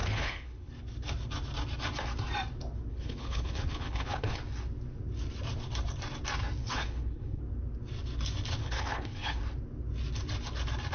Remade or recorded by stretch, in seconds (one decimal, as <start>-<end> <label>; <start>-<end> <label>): 0.0-0.7 remade; 0.7-2.9 recorded; 2.9-4.4 remade; 4.4-6.6 recorded; 6.6-7.4 remade; 7.4-8.6 recorded; 8.6-9.4 remade; 9.4-10.9 recorded